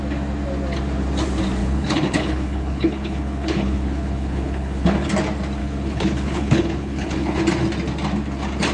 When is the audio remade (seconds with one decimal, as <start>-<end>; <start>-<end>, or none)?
1.6-5.1; 5.6-7.4